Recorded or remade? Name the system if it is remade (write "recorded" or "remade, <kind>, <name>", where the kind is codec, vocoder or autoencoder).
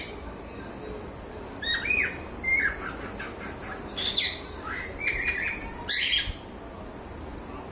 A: recorded